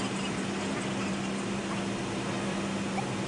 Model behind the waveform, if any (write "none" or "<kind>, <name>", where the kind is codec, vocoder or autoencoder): none